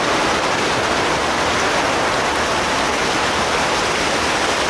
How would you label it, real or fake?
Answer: real